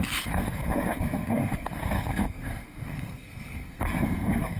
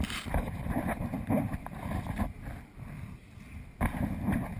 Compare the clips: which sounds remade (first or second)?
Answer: first